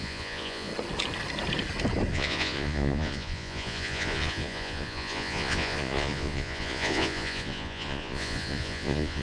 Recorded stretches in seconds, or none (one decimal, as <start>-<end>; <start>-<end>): 0.7-2.1

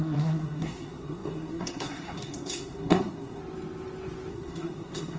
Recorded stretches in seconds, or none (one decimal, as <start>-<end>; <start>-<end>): 3.4-4.3

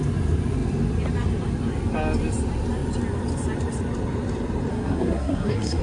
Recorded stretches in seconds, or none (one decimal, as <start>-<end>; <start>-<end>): 0.0-4.7